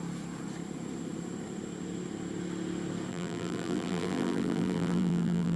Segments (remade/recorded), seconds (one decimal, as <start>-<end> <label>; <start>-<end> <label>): 0.0-3.1 recorded; 3.1-5.6 remade